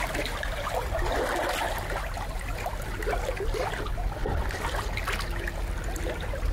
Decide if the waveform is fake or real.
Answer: real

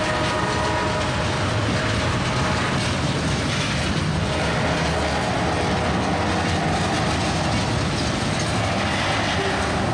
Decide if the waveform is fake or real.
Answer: real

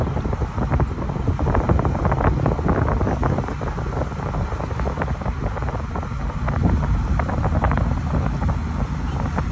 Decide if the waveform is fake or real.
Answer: real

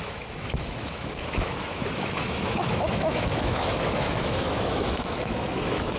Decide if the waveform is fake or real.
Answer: fake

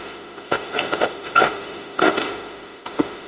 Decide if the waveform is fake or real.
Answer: fake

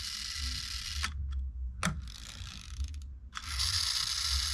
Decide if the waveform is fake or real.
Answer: real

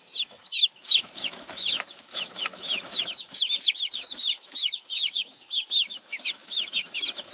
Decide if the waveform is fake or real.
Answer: fake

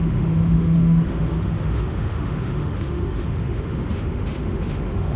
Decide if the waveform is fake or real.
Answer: fake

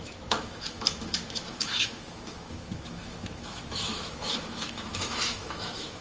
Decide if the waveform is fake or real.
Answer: fake